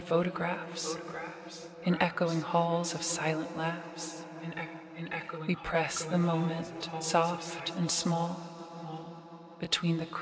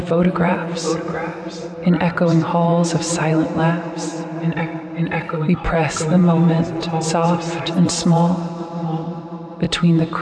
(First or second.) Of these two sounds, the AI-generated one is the second